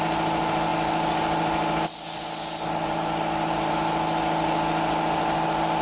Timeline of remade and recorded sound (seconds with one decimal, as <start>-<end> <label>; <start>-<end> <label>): 0.0-5.8 recorded